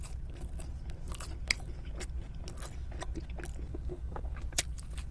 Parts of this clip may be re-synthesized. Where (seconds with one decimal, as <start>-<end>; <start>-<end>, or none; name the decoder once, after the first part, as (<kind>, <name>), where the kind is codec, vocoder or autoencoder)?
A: 3.7-4.6 (codec, DAC)